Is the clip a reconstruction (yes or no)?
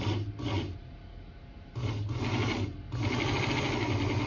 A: no